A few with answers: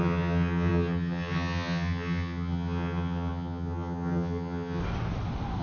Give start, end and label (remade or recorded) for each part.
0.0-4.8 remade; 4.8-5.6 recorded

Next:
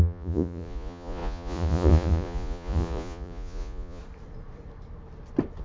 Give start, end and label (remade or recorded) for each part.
0.0-4.0 remade; 4.0-5.6 recorded

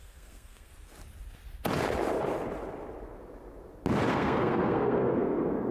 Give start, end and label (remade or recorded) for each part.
0.0-0.7 remade; 0.7-4.1 recorded; 4.1-5.7 remade

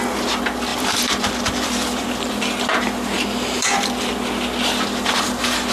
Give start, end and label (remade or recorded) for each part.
0.0-0.7 recorded; 0.7-4.1 remade; 4.1-5.7 recorded

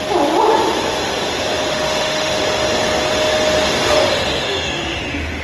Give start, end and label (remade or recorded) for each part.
0.0-1.7 recorded; 1.7-2.3 remade; 2.3-4.4 recorded; 4.4-5.0 remade; 5.0-5.4 recorded